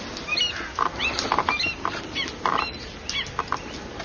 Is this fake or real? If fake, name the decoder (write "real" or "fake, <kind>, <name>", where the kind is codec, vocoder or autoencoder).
real